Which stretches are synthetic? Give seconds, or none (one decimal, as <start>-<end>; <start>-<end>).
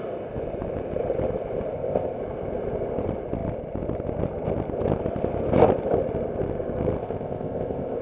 1.7-2.2; 7.0-8.0